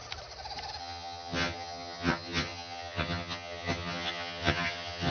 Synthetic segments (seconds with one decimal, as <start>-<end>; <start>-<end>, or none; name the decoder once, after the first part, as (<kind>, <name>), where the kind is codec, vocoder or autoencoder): 0.8-5.1 (vocoder, HiFi-GAN)